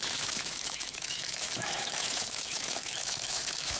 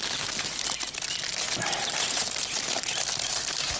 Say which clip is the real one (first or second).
second